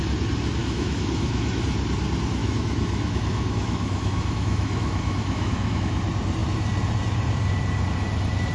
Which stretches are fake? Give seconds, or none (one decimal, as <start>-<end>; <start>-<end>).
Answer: 0.6-1.6; 2.4-5.9